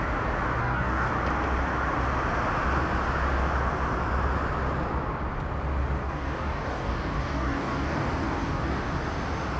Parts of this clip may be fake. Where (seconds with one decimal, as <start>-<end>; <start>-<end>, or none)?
0.6-1.1; 6.0-8.9